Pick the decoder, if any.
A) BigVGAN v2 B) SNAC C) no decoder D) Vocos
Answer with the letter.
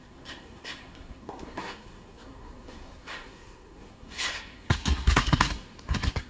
B